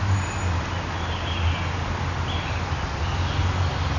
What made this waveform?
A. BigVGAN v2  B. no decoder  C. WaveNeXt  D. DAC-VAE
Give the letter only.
B